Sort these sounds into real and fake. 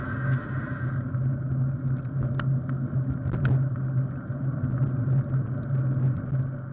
real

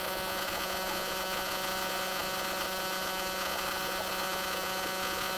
fake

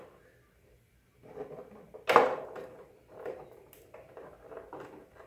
real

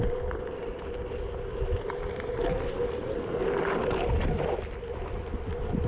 real